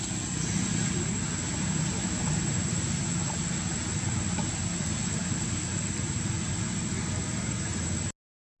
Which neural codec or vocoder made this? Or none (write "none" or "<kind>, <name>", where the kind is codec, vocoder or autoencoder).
none